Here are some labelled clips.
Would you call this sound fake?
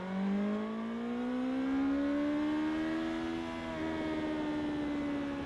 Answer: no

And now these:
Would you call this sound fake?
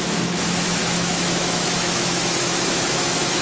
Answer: yes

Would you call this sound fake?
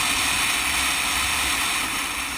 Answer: no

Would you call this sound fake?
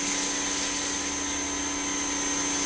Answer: no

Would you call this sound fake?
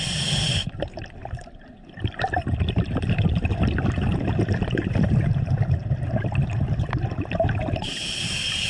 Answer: yes